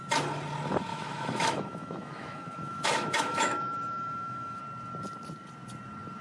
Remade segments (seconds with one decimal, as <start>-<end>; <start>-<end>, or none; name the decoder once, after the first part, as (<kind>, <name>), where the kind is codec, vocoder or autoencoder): 0.9-4.6 (autoencoder, DAC-VAE)